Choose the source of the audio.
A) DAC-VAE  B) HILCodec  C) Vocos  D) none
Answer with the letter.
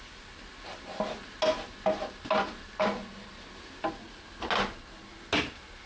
D